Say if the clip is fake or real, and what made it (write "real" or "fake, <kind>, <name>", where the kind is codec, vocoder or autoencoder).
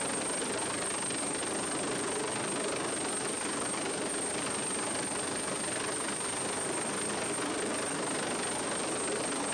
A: real